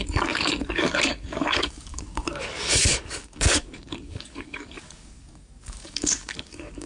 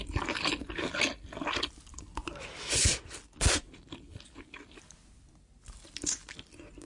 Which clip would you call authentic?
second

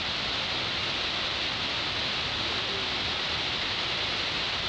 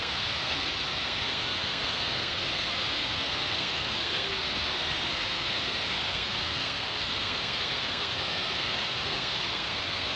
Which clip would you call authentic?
first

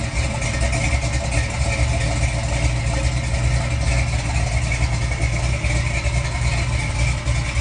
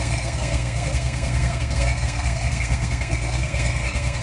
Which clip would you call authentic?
first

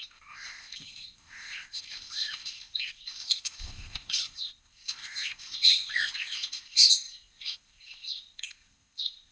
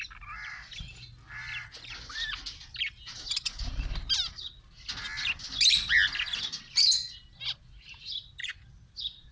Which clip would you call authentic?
second